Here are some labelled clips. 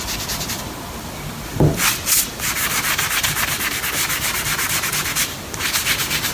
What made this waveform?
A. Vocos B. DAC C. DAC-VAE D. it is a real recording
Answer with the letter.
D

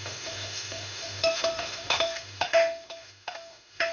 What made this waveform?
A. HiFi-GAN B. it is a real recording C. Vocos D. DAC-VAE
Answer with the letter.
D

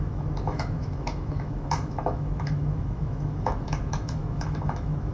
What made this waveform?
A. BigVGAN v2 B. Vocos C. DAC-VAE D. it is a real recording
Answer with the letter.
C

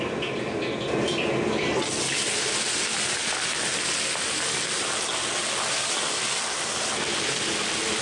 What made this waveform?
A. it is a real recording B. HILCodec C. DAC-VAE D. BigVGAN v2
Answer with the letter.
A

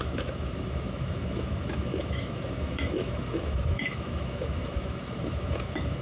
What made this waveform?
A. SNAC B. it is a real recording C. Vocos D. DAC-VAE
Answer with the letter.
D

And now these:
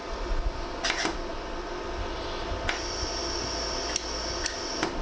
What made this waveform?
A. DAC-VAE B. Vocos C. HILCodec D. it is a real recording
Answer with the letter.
D